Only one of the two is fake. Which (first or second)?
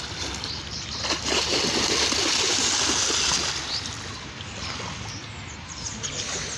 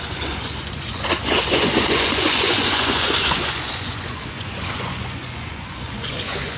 second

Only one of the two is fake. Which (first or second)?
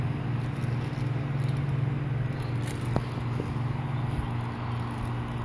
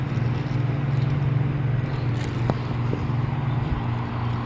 second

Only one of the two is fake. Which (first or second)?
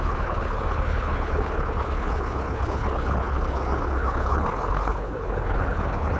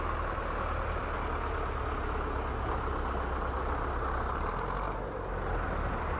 first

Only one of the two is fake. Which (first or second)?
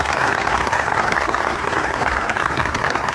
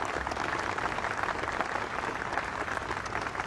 first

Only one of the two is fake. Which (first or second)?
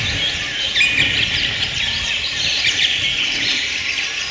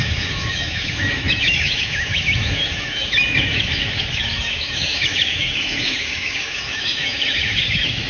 second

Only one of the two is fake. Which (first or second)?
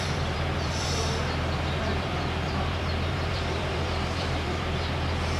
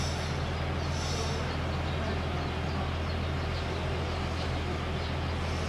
first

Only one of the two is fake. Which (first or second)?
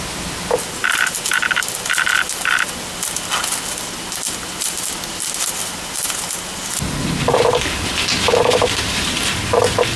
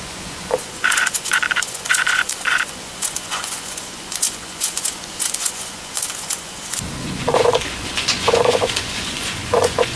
second